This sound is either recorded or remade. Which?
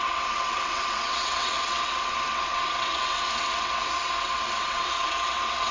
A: remade